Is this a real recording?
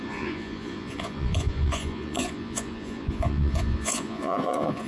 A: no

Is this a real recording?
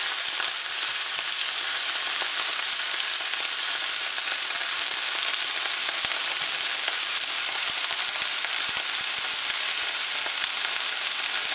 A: no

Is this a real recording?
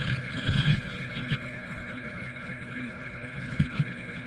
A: no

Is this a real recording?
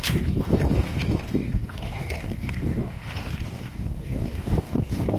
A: no